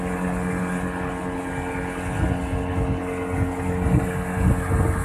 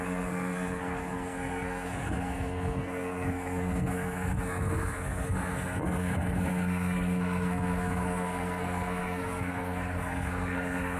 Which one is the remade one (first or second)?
second